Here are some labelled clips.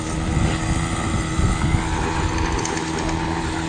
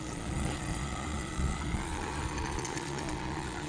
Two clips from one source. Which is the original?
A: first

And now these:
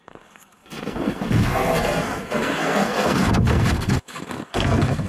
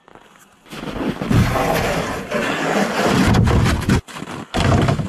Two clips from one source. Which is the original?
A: second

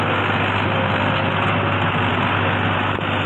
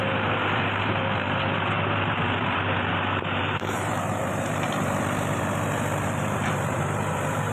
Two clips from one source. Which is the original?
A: first